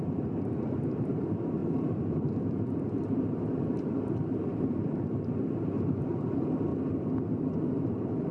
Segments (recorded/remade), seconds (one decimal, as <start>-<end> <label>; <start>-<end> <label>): 0.0-6.7 remade; 6.7-7.5 recorded; 7.5-8.3 remade